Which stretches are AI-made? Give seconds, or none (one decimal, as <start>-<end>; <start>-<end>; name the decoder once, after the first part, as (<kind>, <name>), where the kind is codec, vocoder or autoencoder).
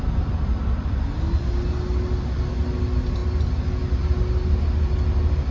none